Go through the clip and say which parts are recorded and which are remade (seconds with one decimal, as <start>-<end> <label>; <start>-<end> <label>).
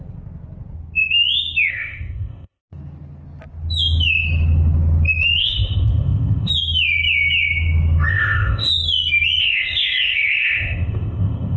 0.0-1.7 recorded; 1.7-2.6 remade; 2.6-5.4 recorded; 5.4-6.5 remade; 6.5-8.1 recorded; 8.1-8.7 remade; 8.7-9.4 recorded; 9.4-11.6 remade